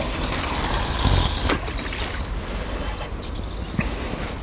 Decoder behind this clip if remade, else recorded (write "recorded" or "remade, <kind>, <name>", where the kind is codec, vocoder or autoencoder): recorded